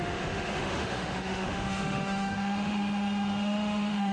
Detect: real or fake fake